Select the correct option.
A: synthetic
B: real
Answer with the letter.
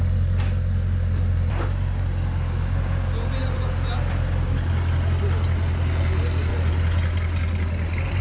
B